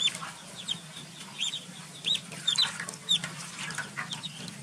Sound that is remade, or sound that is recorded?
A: recorded